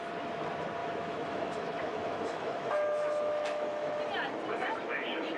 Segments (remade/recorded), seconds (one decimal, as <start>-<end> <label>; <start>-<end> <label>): 0.0-0.8 recorded; 0.8-4.0 remade; 4.0-5.4 recorded